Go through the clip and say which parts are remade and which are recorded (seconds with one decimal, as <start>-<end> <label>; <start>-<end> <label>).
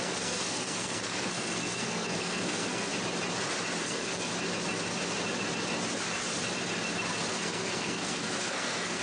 0.0-2.9 remade; 2.9-3.8 recorded; 3.8-4.3 remade; 4.3-7.3 recorded; 7.3-9.0 remade